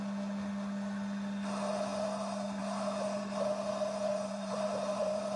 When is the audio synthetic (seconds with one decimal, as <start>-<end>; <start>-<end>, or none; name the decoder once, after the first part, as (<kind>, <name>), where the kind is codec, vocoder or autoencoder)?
4.1-5.4 (vocoder, BigVGAN v2)